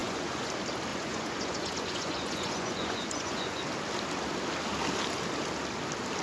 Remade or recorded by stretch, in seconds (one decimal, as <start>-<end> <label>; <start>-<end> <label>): 0.0-0.5 remade; 0.5-0.9 recorded; 0.9-3.6 remade; 3.6-6.2 recorded